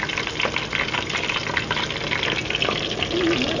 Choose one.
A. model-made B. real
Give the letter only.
B